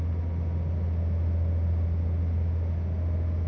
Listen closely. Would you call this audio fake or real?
real